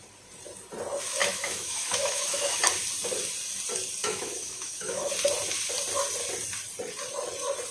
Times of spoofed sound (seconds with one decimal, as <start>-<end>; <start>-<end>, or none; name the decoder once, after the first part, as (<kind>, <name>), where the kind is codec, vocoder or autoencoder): 1.2-2.6 (autoencoder, DAC-VAE); 4.0-5.1